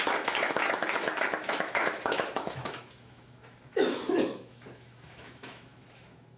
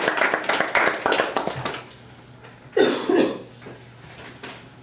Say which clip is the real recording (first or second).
second